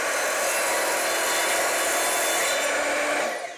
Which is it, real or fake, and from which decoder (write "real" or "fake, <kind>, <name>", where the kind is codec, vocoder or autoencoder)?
real